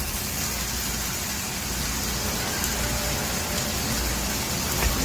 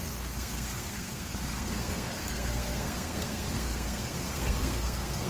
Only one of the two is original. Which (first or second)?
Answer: first